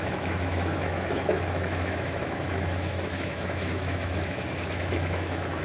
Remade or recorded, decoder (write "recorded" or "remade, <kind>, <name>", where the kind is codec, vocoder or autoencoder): remade, autoencoder, DAC-VAE